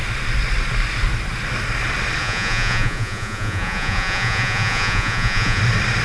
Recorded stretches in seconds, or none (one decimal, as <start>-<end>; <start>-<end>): 0.0-2.2; 5.6-6.0